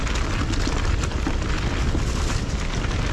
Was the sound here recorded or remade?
recorded